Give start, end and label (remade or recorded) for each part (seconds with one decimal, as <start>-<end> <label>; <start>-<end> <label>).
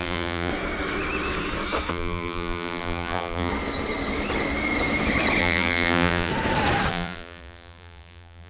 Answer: 0.0-0.5 remade; 0.5-1.9 recorded; 1.9-3.5 remade; 3.5-5.4 recorded; 5.4-6.3 remade; 6.3-6.9 recorded; 6.9-8.5 remade